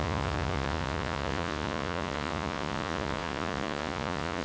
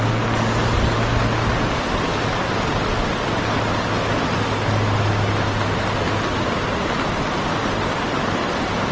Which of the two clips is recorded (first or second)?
second